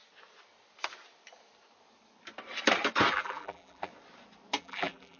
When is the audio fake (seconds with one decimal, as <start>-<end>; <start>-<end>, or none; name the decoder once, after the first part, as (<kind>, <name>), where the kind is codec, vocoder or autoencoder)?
3.1-3.9 (vocoder, BigVGAN v2); 4.6-5.2